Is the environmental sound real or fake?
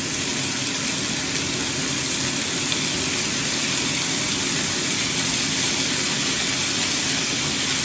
real